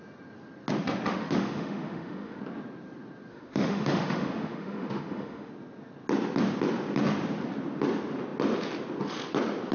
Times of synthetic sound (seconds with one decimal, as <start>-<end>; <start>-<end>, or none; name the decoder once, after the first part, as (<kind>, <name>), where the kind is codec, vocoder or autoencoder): 1.1-2.4 (autoencoder, DAC-VAE); 3.3-5.5